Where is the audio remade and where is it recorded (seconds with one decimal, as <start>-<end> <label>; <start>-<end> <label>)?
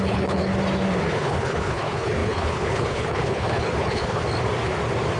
0.0-0.5 remade; 0.5-1.0 recorded; 1.0-4.2 remade; 4.2-5.2 recorded